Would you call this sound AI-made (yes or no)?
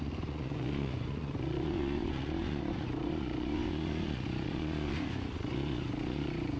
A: yes